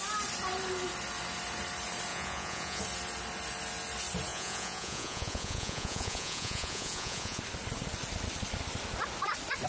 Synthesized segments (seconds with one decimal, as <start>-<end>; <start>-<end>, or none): 2.1-2.8; 4.3-7.4